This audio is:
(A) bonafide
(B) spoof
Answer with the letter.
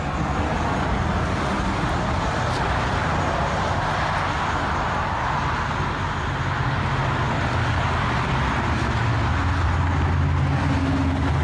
A